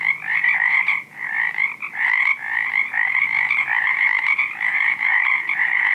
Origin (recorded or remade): remade